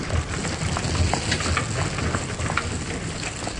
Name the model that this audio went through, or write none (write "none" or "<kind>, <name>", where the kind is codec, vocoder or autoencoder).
none